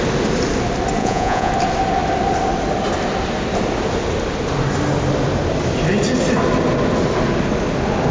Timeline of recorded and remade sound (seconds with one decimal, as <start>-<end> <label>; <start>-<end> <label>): 0.0-1.0 recorded; 1.0-1.5 remade; 1.5-8.1 recorded